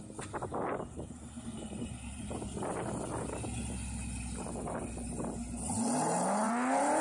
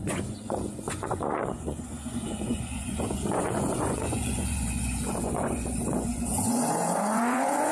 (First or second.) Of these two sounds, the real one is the first